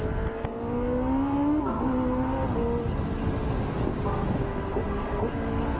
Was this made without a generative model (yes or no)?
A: yes